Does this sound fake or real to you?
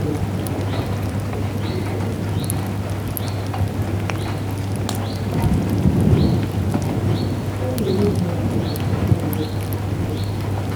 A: real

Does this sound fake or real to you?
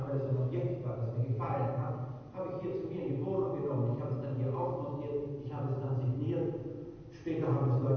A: real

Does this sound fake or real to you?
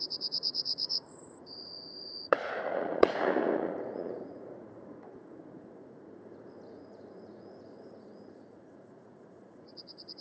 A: fake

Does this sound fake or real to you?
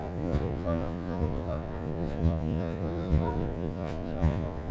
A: fake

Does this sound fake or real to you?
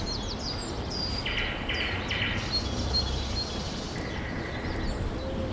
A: real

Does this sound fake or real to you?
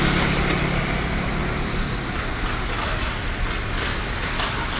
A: real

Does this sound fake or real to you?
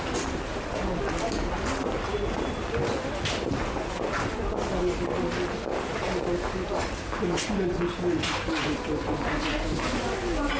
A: real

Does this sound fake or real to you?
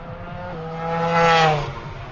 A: real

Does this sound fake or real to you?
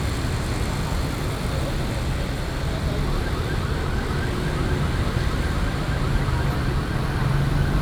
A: real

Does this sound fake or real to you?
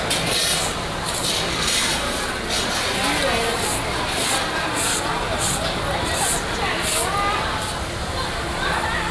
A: real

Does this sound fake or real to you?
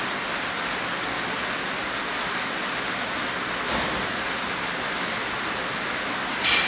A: real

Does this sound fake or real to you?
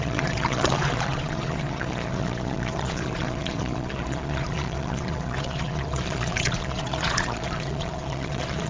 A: fake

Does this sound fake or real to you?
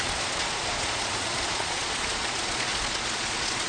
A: fake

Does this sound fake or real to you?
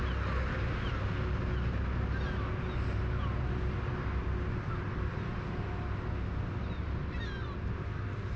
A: real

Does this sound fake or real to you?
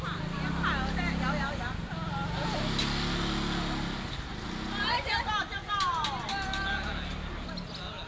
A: real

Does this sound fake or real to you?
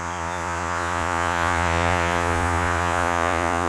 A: fake